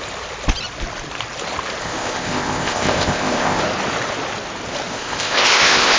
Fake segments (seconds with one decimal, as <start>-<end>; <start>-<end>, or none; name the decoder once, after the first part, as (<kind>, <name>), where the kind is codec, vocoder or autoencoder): 1.8-3.6 (codec, ZipCodec); 4.9-6.0